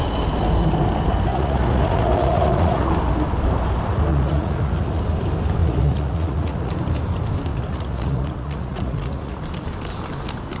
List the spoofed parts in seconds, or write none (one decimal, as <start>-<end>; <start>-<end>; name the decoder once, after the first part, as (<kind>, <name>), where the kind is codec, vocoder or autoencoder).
1.3-2.9 (vocoder, Vocos); 4.1-5.0; 5.6-6.7; 7.5-9.4